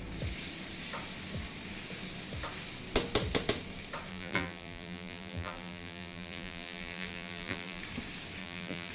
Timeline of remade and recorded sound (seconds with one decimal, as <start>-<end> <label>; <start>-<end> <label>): 0.0-4.1 recorded; 4.1-7.8 remade; 7.8-8.4 recorded; 8.4-8.9 remade